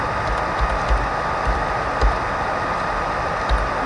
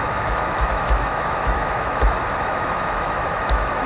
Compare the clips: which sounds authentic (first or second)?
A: first